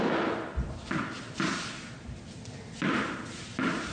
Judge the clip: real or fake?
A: real